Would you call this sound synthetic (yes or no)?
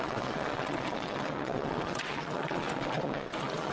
yes